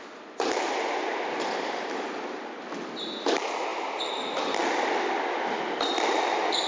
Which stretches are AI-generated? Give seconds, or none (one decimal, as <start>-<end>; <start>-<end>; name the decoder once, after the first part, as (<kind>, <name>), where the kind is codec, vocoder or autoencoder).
none